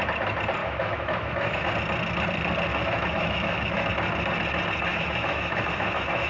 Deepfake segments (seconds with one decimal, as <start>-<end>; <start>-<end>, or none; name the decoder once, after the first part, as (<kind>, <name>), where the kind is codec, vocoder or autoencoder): 0.6-1.7 (autoencoder, DAC-VAE); 2.7-3.9; 4.9-6.3